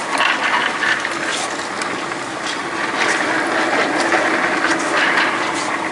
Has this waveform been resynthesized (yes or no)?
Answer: no